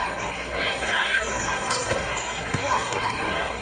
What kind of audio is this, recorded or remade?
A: remade